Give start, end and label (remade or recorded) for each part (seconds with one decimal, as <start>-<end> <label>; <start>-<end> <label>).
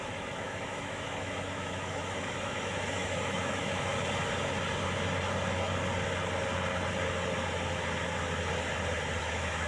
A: 0.0-3.9 remade; 3.9-9.2 recorded; 9.2-9.7 remade